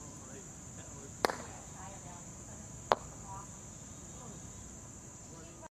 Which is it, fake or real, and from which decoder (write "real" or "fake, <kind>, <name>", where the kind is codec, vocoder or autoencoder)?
real